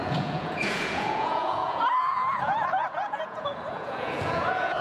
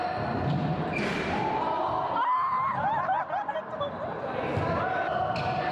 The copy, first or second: first